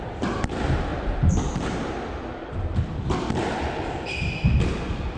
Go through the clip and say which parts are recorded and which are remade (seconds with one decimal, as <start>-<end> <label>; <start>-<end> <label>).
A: 0.0-5.2 recorded